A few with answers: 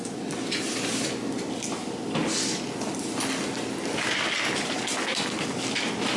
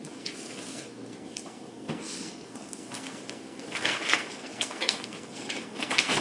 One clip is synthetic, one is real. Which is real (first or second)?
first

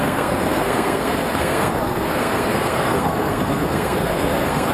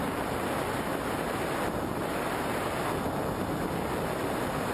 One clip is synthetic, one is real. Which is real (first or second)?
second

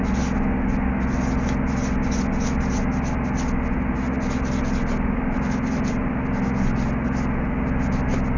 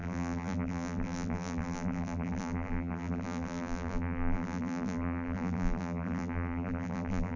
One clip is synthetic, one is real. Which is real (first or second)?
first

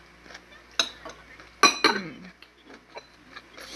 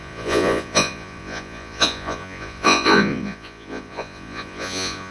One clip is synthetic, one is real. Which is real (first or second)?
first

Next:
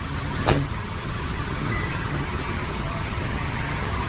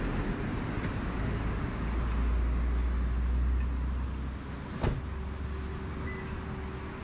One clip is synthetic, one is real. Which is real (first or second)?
second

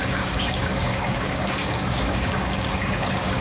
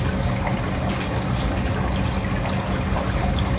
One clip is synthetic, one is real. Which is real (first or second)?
second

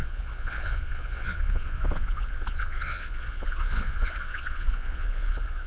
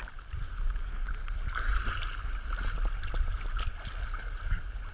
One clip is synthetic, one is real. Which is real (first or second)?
second